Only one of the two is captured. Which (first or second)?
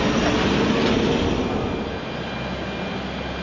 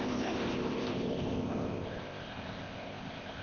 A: first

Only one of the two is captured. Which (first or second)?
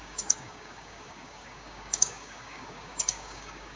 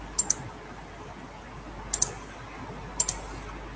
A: second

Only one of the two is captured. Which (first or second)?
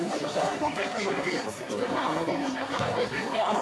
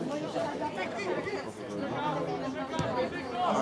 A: second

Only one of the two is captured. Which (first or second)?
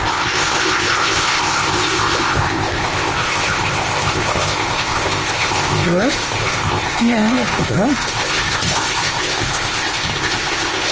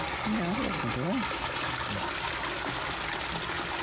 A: second